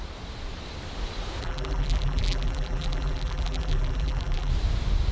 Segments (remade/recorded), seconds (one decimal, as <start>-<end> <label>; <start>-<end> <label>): 0.0-1.4 recorded; 1.4-4.5 remade; 4.5-5.1 recorded